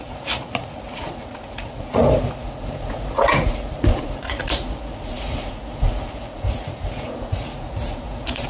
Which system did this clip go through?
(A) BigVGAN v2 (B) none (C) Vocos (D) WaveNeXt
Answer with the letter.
C